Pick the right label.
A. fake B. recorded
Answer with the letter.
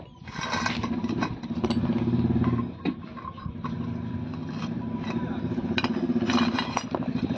B